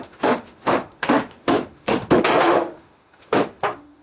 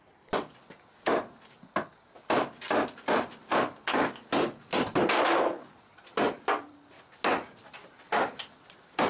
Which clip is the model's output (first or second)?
first